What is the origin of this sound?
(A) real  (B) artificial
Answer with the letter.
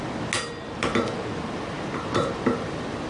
A